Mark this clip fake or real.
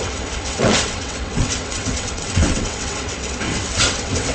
fake